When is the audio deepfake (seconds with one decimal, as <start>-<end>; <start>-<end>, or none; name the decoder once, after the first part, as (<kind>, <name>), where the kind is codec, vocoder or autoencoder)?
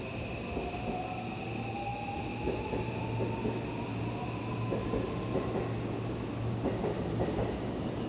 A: 1.9-2.8 (autoencoder, DAC-VAE)